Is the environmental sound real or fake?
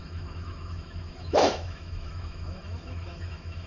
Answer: fake